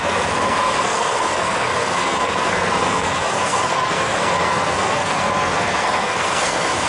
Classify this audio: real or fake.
fake